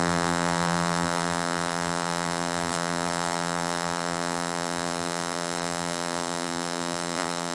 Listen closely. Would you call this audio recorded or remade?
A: remade